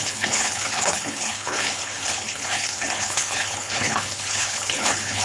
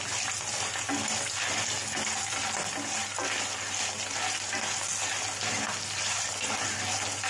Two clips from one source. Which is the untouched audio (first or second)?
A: second